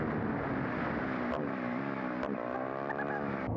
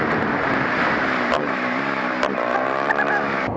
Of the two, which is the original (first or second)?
first